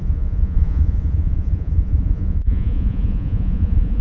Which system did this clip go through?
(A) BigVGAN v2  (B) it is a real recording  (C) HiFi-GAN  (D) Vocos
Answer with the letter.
D